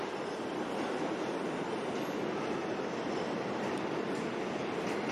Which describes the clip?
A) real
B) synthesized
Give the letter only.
A